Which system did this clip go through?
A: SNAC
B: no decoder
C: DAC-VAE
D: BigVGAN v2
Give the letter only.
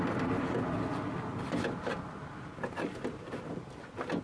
B